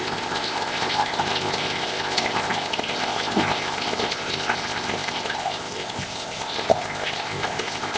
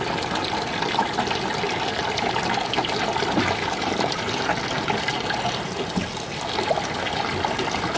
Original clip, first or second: second